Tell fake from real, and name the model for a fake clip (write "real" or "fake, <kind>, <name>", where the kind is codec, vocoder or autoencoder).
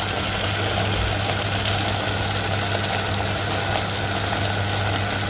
real